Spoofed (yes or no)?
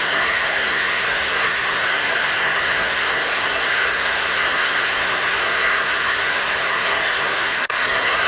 yes